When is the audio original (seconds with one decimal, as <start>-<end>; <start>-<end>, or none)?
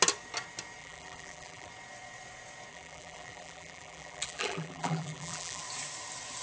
0.0-0.8; 1.7-2.7; 5.6-6.4